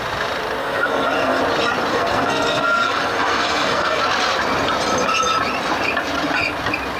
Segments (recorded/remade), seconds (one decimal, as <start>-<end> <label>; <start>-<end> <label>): 0.0-0.6 recorded; 0.6-1.4 remade; 1.4-1.9 recorded; 1.9-4.0 remade; 4.0-7.0 recorded